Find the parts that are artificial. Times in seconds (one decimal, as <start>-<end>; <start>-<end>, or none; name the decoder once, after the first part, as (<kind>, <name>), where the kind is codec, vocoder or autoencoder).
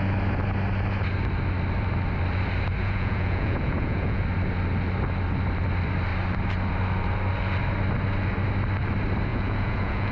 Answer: 2.8-4.2 (vocoder, Vocos); 9.3-10.1